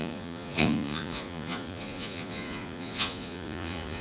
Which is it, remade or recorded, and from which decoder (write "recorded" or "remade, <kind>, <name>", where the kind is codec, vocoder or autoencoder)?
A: remade, vocoder, Vocos